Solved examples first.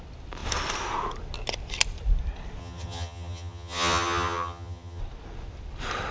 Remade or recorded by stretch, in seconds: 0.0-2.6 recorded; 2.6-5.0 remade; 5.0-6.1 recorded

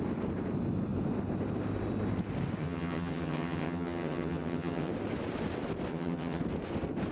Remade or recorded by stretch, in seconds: 0.0-2.6 recorded; 2.6-4.9 remade; 4.9-5.9 recorded; 5.9-6.4 remade; 6.4-7.1 recorded

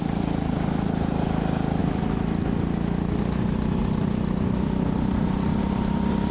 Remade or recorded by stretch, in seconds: 0.0-6.3 recorded

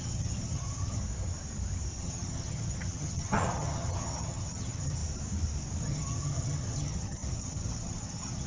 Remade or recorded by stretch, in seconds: 0.0-1.0 remade; 1.0-2.0 recorded; 2.0-5.0 remade; 5.0-5.8 recorded; 5.8-8.5 remade

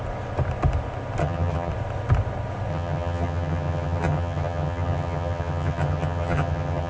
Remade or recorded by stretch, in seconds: 0.0-1.2 recorded; 1.2-1.7 remade; 1.7-2.7 recorded; 2.7-6.9 remade